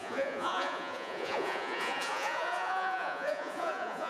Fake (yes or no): yes